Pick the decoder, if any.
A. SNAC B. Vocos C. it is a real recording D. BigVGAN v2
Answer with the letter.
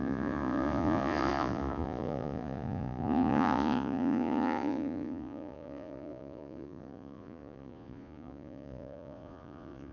B